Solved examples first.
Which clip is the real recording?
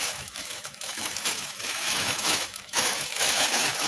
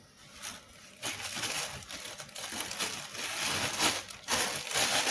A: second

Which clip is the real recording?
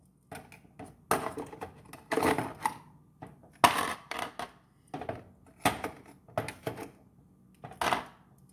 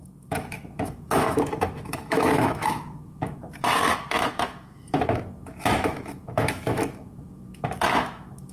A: first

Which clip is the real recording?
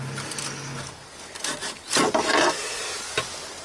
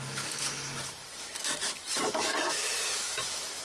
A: first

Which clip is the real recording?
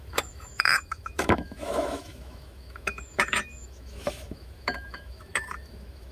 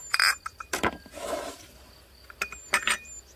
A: second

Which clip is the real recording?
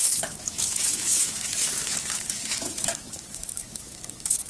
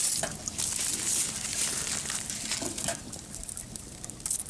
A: second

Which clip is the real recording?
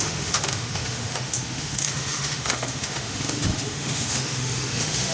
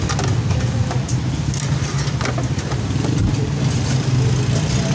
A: second